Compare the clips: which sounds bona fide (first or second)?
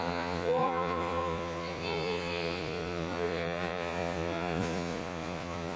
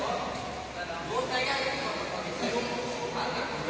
second